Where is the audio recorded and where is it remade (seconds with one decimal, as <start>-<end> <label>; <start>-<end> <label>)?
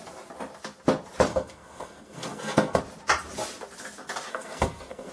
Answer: 0.0-1.3 recorded; 1.3-2.8 remade; 2.8-4.3 recorded; 4.3-5.1 remade